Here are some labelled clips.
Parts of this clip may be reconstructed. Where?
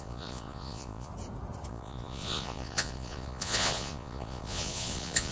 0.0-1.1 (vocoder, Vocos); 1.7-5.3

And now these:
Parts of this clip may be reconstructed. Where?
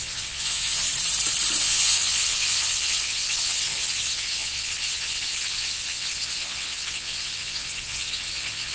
0.0-0.9 (vocoder, WaveNeXt); 1.6-8.7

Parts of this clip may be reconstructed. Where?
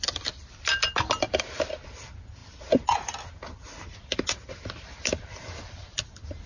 none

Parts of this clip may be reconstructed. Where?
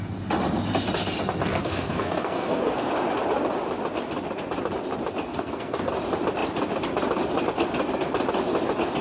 1.5-2.9 (codec, SNAC); 5.3-5.9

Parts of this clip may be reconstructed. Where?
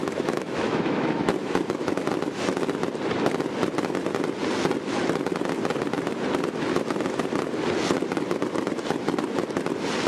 0.0-1.9 (autoencoder, DAC-VAE)